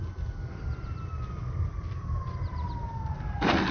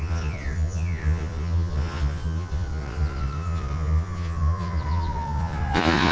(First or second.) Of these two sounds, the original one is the first